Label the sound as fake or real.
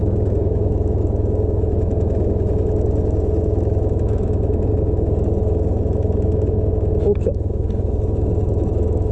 fake